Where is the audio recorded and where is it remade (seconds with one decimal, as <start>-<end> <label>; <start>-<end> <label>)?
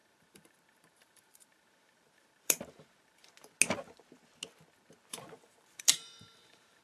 0.0-3.3 remade; 3.3-5.1 recorded; 5.1-6.8 remade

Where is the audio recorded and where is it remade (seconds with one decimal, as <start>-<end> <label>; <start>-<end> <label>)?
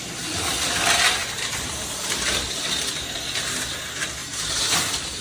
0.0-1.2 recorded; 1.2-2.9 remade; 2.9-4.2 recorded; 4.2-4.8 remade; 4.8-5.2 recorded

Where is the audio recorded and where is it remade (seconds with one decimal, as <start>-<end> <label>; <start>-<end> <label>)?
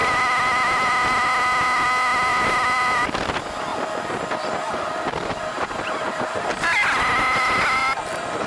0.0-0.9 remade; 0.9-2.3 recorded; 2.3-3.2 remade; 3.2-3.7 recorded; 3.7-7.0 remade; 7.0-8.5 recorded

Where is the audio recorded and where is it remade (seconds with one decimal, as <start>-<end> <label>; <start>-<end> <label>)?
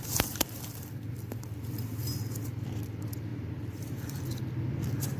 0.0-5.2 remade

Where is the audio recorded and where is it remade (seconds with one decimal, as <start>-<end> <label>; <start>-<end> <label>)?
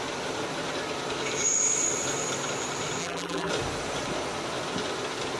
0.0-3.0 recorded; 3.0-3.5 remade; 3.5-5.4 recorded